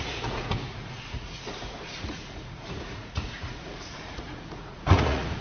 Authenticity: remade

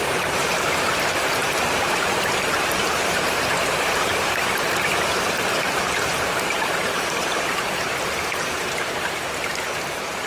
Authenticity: remade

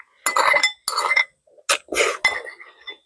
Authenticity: recorded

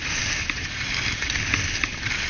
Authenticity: recorded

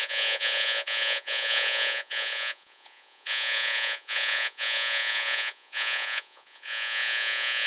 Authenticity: remade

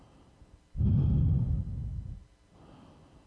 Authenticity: recorded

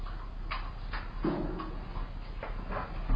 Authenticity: recorded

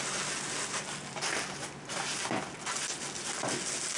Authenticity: recorded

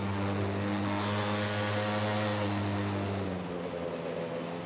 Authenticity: recorded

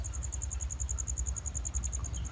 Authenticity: recorded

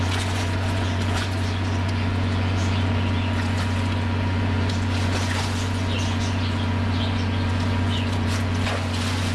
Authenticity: remade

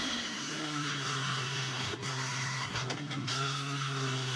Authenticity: remade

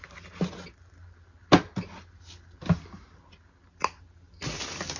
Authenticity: recorded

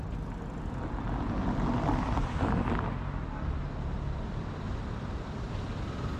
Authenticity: recorded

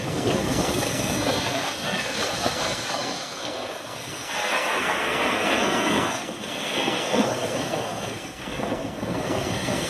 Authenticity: remade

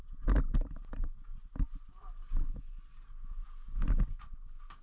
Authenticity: recorded